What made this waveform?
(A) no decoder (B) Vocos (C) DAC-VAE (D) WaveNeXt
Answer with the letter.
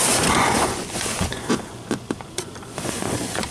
B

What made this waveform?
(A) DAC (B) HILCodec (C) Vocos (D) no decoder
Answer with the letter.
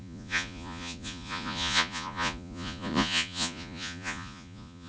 C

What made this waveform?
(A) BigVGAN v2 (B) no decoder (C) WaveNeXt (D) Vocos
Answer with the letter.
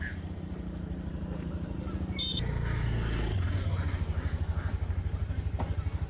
B